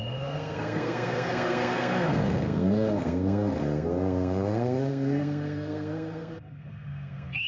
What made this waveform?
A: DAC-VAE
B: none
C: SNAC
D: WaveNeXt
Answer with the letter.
C